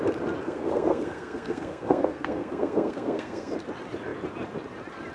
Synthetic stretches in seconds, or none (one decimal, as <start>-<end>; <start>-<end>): 0.4-3.5

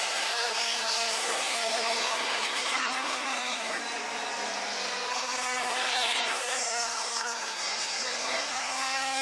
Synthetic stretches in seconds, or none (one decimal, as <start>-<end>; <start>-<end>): 0.0-3.8; 5.1-9.2

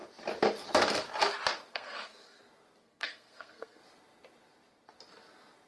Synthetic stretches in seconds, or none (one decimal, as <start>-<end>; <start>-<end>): 1.7-2.4; 2.8-3.8

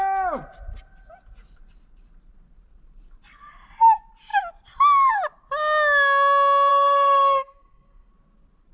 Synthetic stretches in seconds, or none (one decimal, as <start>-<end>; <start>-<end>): 6.7-8.1